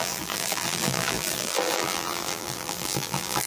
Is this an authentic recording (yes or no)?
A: no